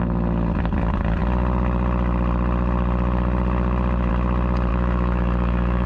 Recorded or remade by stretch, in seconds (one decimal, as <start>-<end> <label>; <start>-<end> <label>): 0.0-4.7 recorded; 4.7-5.9 remade